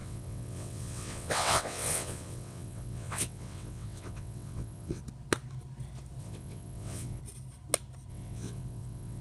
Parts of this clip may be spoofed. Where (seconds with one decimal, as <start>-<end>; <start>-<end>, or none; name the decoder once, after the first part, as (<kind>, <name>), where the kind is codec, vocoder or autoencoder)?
0.0-5.0 (vocoder, WaveNeXt); 6.2-7.2; 8.1-9.2

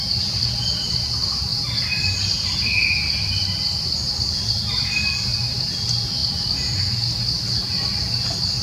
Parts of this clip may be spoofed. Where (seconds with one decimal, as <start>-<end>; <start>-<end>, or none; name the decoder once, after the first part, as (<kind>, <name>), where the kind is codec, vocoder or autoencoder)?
none

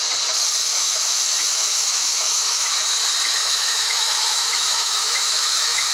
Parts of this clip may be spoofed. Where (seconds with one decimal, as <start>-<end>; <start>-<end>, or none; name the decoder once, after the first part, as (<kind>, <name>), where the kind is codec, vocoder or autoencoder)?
0.6-2.7 (autoencoder, DAC-VAE); 3.4-5.9

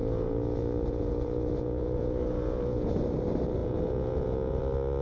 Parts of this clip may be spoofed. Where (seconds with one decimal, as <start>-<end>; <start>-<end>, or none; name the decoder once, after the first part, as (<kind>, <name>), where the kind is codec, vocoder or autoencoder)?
0.0-3.0 (vocoder, Vocos); 3.6-4.6

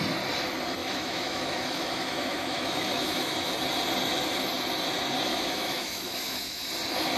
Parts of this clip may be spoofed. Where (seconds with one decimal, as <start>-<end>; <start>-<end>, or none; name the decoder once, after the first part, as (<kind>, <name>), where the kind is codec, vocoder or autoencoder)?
0.8-3.5 (autoencoder, DAC-VAE); 5.3-6.7

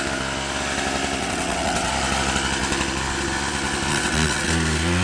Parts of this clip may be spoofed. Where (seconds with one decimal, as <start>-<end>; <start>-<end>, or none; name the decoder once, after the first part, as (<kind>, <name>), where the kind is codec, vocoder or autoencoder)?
1.2-1.9 (vocoder, WaveNeXt); 3.9-4.5

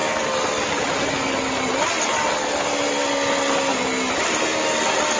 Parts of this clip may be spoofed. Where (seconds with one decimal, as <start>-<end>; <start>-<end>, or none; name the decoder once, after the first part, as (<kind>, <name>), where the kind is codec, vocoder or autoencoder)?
none

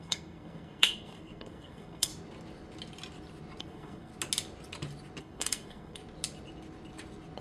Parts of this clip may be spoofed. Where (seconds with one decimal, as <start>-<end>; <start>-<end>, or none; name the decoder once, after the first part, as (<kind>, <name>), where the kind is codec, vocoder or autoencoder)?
0.0-2.1 (codec, SNAC); 3.6-4.1; 5.2-6.0